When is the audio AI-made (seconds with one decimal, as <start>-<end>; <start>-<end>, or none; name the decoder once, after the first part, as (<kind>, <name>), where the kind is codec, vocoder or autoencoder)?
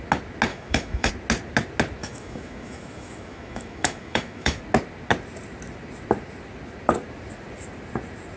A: 0.5-1.1 (autoencoder, DAC-VAE); 2.0-4.6